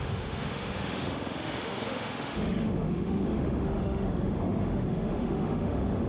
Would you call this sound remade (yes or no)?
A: yes